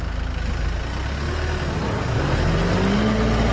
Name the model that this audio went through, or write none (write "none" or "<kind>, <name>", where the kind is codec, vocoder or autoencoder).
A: none